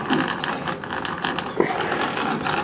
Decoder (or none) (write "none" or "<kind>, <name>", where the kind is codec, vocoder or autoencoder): none